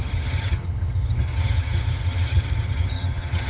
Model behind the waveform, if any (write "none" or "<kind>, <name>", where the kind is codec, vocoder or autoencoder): vocoder, HiFi-GAN